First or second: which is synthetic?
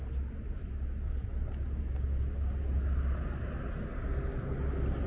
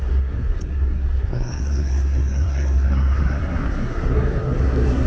second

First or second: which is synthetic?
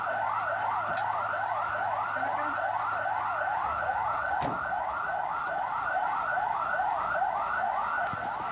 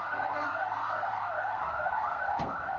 second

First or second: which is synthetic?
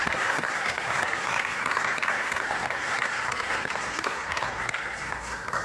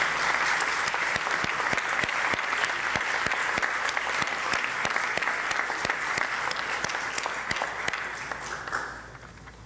first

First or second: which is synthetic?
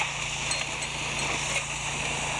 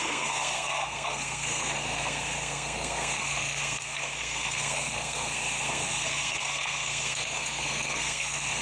second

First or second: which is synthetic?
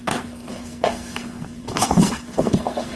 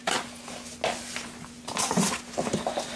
first